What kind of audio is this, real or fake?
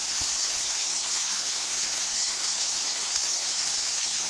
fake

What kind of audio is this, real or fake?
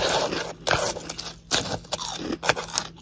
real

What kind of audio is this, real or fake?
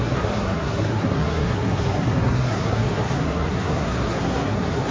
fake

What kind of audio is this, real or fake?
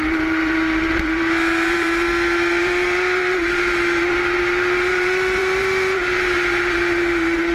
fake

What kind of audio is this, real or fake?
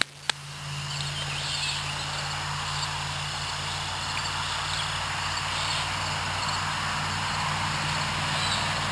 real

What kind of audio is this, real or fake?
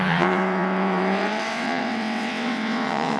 fake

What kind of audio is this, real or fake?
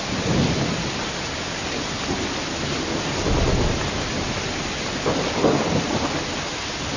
real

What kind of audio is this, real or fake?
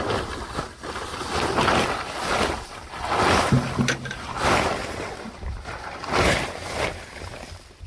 real